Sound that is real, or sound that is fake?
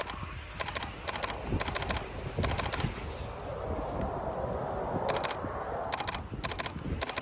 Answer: real